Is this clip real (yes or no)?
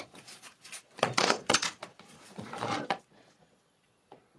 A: no